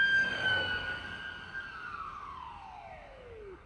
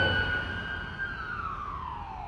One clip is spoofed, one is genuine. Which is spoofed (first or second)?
first